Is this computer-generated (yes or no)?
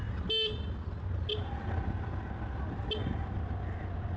no